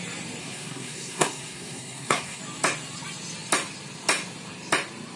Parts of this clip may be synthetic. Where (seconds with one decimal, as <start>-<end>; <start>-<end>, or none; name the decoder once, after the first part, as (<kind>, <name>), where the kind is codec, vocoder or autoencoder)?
0.4-2.4 (codec, SNAC)